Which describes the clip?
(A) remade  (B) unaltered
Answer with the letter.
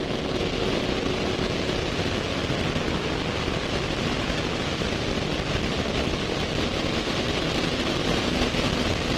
B